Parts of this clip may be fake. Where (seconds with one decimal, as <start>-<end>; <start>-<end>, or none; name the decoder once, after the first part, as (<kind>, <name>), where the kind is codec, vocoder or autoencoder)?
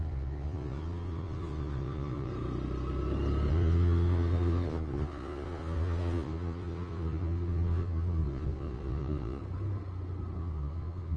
0.0-2.3 (vocoder, Vocos); 3.5-9.4; 10.4-11.2